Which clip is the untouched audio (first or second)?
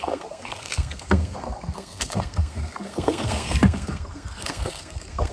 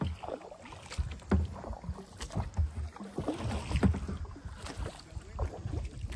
second